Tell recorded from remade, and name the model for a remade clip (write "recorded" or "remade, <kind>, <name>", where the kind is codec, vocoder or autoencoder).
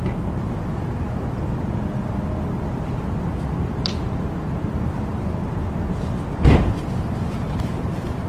remade, vocoder, BigVGAN v2